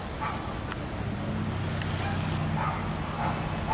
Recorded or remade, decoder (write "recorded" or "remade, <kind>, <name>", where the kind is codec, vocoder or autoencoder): recorded